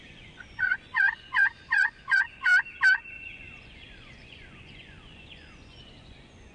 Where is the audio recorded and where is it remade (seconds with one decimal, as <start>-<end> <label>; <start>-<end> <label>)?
0.0-2.5 remade; 2.5-3.1 recorded; 3.1-6.5 remade